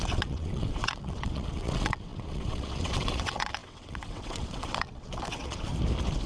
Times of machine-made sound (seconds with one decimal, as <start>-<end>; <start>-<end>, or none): 0.0-5.7